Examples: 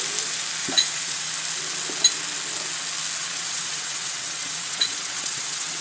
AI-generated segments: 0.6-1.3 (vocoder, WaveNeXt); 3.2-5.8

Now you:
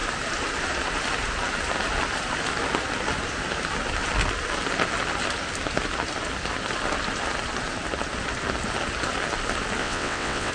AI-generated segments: 9.8-10.5 (vocoder, WaveNeXt)

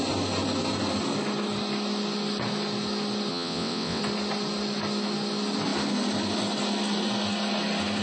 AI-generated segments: 3.3-4.0 (vocoder, WaveNeXt)